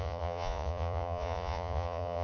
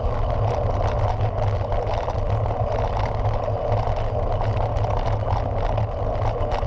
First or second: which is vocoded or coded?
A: first